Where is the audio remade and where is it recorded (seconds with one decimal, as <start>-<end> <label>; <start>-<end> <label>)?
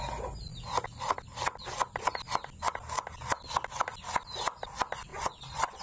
0.0-5.1 recorded; 5.1-5.8 remade